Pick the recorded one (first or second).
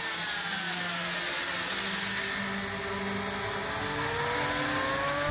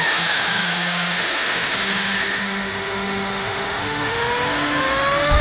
first